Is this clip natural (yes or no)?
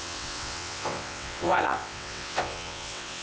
no